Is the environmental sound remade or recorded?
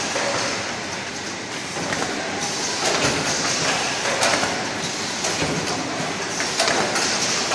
recorded